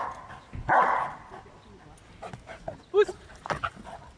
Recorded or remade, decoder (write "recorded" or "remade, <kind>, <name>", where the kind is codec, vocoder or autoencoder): recorded